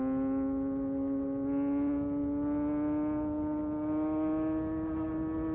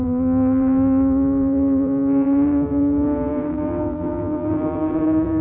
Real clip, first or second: first